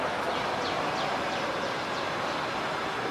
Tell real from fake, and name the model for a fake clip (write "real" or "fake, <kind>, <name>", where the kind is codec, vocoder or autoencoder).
real